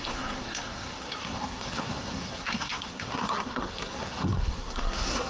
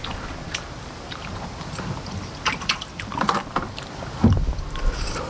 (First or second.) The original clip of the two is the second